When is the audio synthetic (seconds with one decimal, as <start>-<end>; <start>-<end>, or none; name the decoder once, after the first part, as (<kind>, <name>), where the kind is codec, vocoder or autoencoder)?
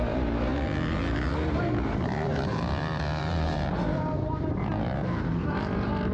0.0-0.5 (vocoder, BigVGAN v2); 1.5-2.5; 3.2-5.0; 5.5-6.1